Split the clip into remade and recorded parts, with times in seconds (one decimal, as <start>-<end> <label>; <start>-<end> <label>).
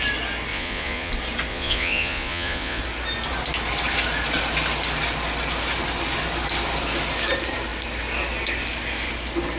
0.0-0.5 recorded; 0.5-1.1 remade; 1.1-1.5 recorded; 1.5-2.8 remade; 2.8-9.6 recorded